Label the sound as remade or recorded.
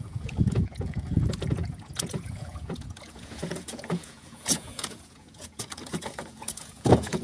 remade